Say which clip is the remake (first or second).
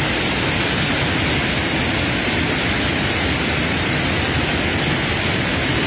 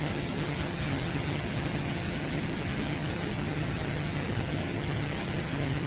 second